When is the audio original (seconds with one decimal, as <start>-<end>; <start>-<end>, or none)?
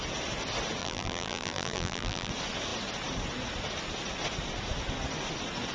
0.0-0.8; 2.3-5.7